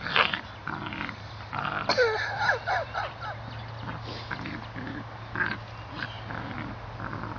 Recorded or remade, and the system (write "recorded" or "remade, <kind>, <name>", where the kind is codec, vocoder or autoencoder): recorded